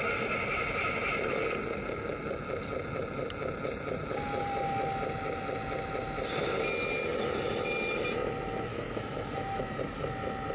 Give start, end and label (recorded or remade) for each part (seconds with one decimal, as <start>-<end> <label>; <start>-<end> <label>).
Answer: 0.0-8.7 recorded; 8.7-9.8 remade; 9.8-10.5 recorded